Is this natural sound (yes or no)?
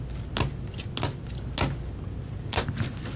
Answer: yes